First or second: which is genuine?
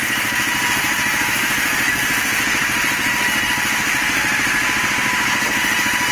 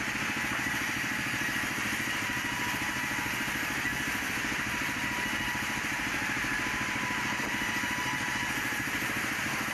first